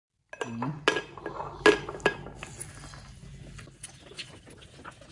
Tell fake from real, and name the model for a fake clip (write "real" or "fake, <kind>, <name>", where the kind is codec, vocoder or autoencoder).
real